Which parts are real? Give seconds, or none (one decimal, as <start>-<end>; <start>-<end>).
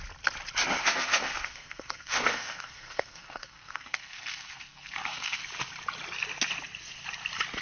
0.0-0.8; 5.4-7.6